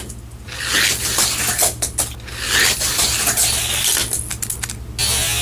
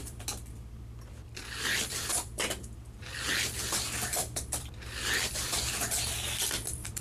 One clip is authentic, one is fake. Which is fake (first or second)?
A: second